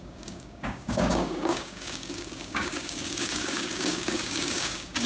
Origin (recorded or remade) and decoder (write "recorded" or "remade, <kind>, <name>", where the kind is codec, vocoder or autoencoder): remade, codec, DAC